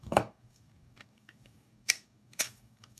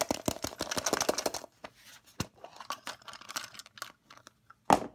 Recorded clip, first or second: second